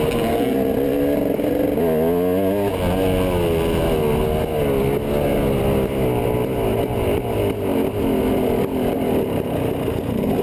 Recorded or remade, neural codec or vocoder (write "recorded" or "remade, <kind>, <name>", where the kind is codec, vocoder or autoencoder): recorded